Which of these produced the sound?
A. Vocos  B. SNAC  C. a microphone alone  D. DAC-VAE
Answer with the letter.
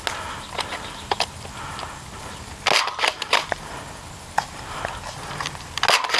C